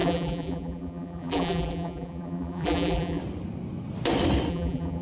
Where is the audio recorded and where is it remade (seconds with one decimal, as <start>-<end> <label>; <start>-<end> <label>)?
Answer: 0.0-3.2 remade; 3.2-4.5 recorded; 4.5-5.0 remade